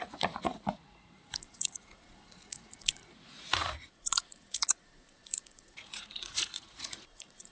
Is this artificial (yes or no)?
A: yes